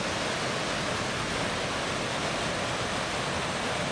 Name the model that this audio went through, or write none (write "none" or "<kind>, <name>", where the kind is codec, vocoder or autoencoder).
none